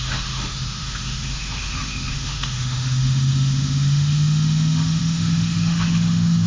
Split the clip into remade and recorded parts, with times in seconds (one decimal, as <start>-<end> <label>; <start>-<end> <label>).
0.0-6.5 remade